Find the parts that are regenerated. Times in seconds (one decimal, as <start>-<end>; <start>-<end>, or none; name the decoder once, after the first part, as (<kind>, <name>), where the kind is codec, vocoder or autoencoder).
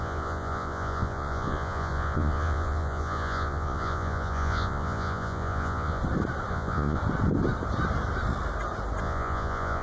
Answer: 0.0-6.0 (vocoder, Vocos); 6.5-7.0; 9.0-9.8